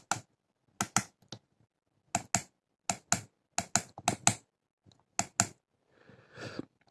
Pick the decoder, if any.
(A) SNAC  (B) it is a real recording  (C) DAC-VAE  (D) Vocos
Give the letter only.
B